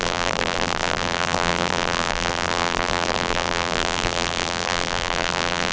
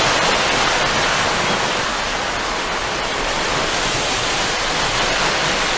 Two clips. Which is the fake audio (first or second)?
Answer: first